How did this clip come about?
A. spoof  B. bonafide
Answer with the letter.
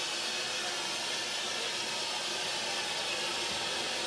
B